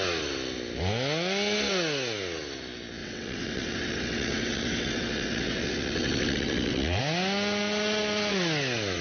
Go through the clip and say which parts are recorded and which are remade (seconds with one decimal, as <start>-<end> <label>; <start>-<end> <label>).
0.0-3.0 recorded; 3.0-7.0 remade; 7.0-9.0 recorded